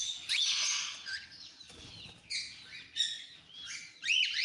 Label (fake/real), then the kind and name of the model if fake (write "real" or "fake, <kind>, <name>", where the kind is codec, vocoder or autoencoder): real